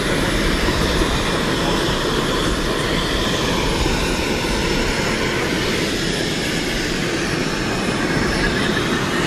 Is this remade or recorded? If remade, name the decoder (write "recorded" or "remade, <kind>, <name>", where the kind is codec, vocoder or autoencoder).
recorded